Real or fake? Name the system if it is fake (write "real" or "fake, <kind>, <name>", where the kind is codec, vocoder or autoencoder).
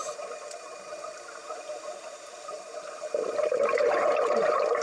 fake, vocoder, BigVGAN v2